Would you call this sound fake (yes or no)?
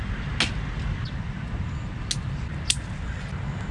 no